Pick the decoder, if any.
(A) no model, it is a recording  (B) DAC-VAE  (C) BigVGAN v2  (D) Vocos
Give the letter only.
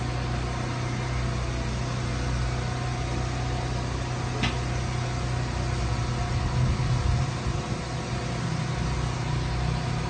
A